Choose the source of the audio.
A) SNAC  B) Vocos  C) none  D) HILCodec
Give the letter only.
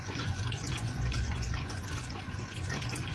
B